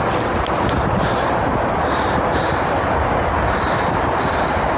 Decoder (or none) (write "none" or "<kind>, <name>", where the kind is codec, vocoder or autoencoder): none